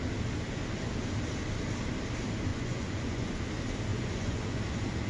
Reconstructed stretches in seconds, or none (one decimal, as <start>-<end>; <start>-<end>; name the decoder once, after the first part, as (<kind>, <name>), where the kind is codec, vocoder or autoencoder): 2.5-3.4 (vocoder, Vocos); 3.9-4.6